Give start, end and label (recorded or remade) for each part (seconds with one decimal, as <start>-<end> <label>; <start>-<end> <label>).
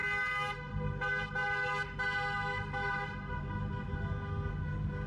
0.0-5.1 recorded